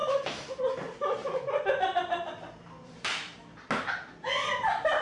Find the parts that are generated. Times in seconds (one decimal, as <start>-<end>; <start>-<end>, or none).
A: 0.0-0.6; 1.2-3.4